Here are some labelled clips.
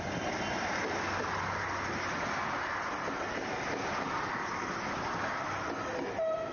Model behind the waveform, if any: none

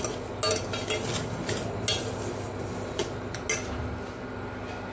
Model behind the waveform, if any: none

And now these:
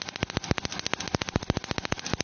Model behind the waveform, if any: none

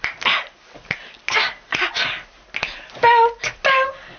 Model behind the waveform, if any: none